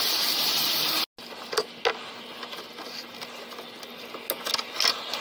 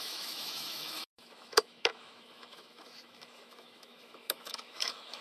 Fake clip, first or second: second